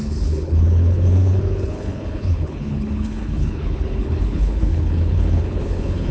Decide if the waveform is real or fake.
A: fake